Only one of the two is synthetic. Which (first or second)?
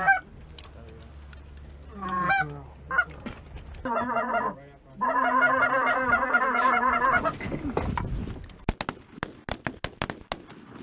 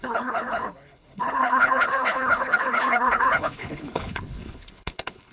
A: second